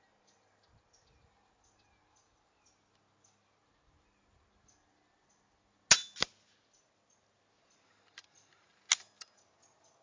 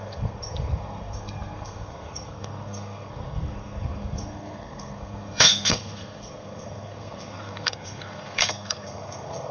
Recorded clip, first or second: first